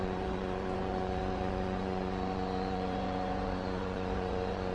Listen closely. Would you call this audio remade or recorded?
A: remade